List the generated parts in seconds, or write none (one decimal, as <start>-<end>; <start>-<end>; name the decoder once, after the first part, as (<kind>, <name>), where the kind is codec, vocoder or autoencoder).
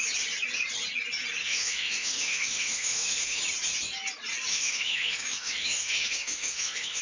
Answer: 1.4-3.4 (autoencoder, DAC-VAE); 4.5-7.0